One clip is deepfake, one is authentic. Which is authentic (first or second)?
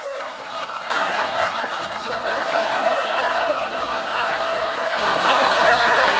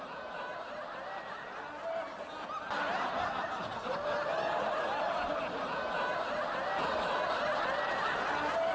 second